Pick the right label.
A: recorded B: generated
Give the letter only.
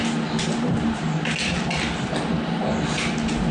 A